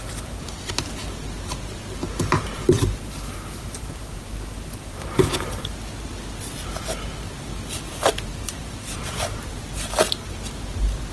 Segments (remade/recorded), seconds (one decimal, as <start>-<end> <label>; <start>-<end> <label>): 0.0-2.5 recorded; 2.5-5.4 remade; 5.4-7.5 recorded; 7.5-9.6 remade; 9.6-11.1 recorded